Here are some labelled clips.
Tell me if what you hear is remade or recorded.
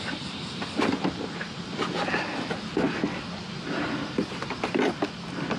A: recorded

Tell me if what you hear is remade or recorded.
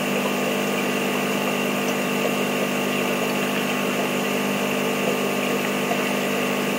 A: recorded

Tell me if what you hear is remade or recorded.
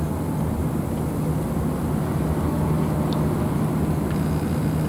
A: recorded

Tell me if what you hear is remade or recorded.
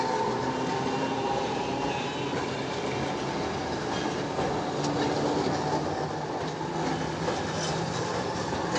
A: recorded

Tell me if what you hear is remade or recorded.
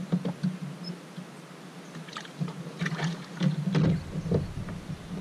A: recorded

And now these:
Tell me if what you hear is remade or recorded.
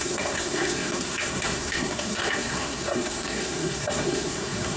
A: remade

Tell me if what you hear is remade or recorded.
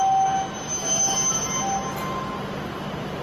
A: recorded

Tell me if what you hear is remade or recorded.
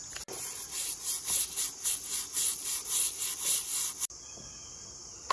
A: recorded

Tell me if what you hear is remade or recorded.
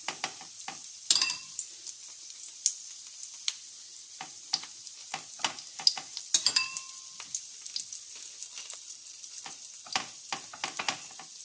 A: recorded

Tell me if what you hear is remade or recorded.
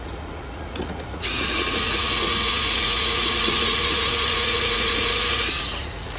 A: remade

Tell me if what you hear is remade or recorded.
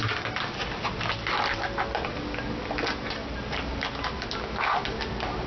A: recorded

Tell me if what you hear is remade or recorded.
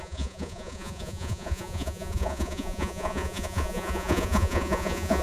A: remade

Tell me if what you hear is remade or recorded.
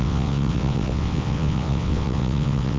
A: remade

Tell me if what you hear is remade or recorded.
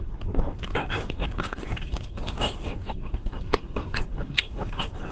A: remade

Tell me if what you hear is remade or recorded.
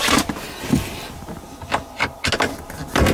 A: recorded